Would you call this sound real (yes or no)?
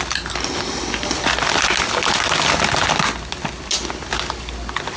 yes